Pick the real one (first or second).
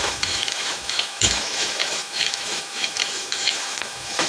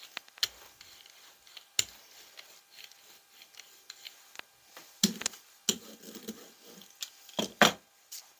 second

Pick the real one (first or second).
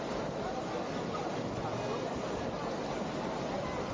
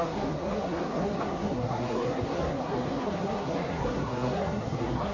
first